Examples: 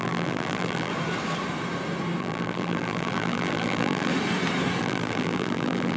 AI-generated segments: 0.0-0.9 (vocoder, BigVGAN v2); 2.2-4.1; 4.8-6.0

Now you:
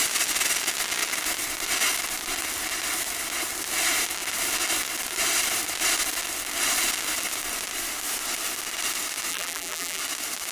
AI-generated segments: 9.3-10.0 (vocoder, BigVGAN v2)

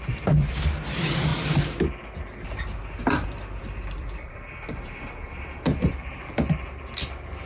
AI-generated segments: 0.0-1.3 (vocoder, BigVGAN v2); 3.0-7.5